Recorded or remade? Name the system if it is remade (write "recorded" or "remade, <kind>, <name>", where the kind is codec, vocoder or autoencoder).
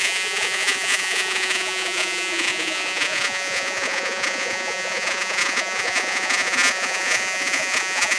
remade, vocoder, Vocos